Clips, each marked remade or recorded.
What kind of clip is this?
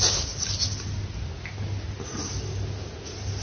recorded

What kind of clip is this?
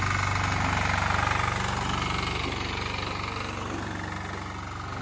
recorded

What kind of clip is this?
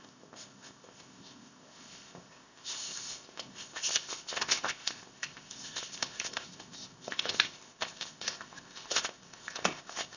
remade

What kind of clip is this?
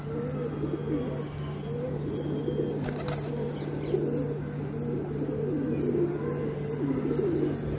recorded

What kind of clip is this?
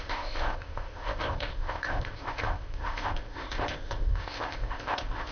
remade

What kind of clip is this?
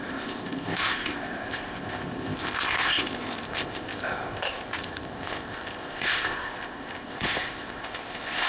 remade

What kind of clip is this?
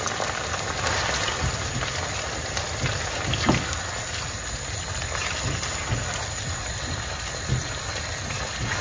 recorded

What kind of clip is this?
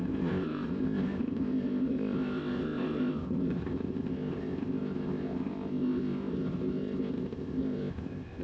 remade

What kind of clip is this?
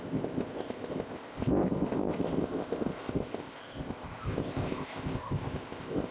remade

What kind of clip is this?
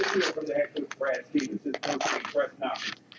recorded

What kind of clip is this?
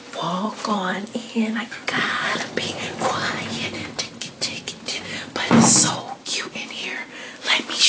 recorded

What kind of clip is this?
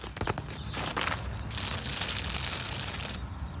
recorded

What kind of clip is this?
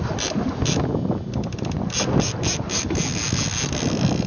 recorded